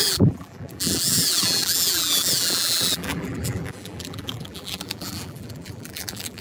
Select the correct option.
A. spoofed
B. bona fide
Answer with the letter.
A